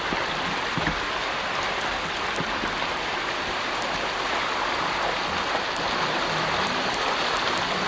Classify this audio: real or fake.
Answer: real